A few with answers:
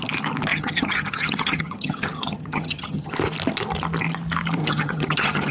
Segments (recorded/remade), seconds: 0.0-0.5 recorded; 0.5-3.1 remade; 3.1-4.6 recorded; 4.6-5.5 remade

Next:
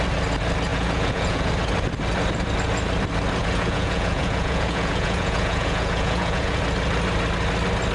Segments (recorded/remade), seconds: 0.0-0.7 recorded; 0.7-1.5 remade; 1.5-3.4 recorded; 3.4-6.6 remade; 6.6-7.9 recorded